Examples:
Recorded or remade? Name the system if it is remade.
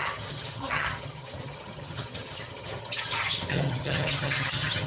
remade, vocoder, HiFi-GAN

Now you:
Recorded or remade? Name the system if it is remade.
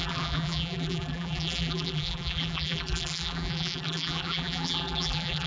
remade, vocoder, BigVGAN v2